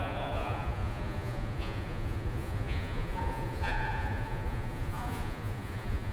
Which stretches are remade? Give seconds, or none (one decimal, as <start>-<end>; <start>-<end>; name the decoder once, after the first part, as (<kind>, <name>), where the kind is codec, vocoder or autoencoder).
0.0-6.1 (vocoder, Vocos)